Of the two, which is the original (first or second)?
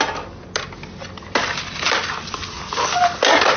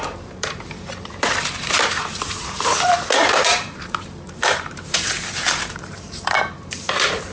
first